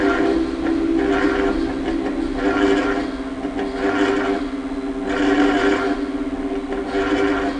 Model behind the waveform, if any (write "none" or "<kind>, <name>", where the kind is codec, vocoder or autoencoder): none